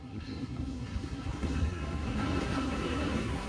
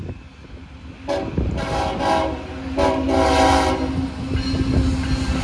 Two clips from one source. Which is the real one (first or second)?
second